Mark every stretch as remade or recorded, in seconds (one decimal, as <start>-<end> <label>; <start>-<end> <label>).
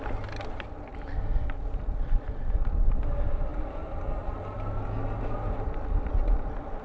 0.0-6.8 recorded